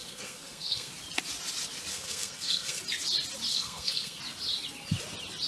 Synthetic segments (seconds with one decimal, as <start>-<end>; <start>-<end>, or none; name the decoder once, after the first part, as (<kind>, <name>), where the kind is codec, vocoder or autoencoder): 0.0-0.9 (codec, SNAC); 1.9-2.8; 3.5-4.2